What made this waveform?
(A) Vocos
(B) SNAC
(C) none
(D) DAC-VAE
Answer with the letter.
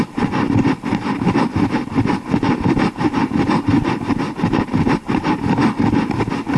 C